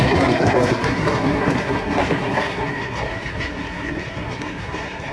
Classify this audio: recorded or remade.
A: remade